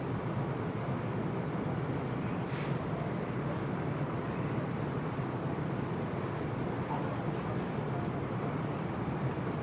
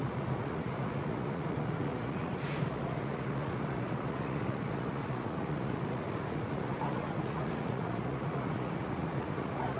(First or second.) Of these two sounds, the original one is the first